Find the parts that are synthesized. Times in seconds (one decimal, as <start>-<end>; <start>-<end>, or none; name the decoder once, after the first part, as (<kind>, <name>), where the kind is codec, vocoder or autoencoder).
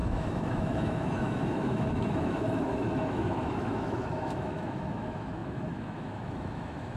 0.0-7.0 (autoencoder, DAC-VAE)